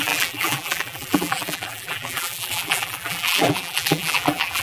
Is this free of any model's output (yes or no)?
no